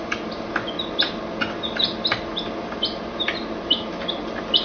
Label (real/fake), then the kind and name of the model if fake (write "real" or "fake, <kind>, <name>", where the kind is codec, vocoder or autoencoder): real